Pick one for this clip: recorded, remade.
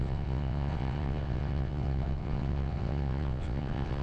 remade